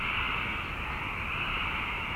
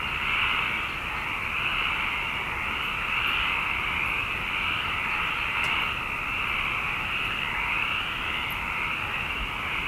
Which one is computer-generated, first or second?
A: first